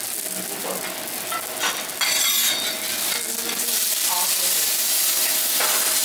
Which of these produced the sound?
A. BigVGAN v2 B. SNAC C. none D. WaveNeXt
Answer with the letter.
C